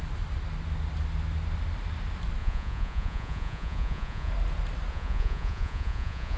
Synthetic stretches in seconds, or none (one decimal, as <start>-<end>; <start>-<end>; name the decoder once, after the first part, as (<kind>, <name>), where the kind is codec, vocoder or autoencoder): 2.4-4.3 (vocoder, Vocos); 4.9-6.4